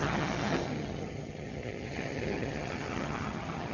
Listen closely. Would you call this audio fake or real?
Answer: fake